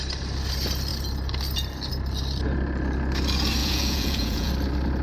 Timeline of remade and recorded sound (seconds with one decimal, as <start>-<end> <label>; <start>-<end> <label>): 0.0-3.6 recorded; 3.6-4.5 remade; 4.5-5.0 recorded

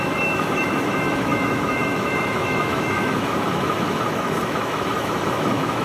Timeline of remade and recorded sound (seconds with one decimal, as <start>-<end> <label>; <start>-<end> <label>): 0.0-5.8 remade

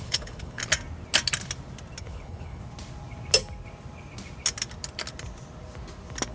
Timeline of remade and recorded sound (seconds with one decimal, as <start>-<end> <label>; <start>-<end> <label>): 0.0-0.6 remade; 0.6-2.0 recorded; 2.0-2.6 remade; 2.6-6.3 recorded